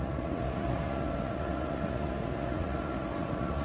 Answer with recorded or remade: remade